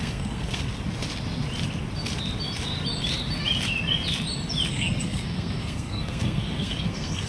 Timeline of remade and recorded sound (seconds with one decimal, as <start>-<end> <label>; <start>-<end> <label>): 0.0-0.7 remade; 0.7-4.7 recorded; 4.7-7.3 remade